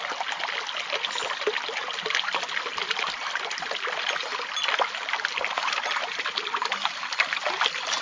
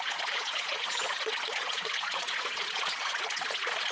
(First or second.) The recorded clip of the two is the first